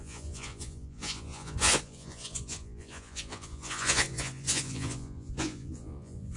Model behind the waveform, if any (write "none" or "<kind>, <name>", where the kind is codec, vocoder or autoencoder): vocoder, Vocos